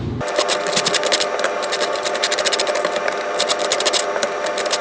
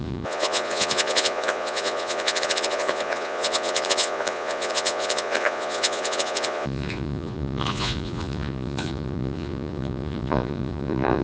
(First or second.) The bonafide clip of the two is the first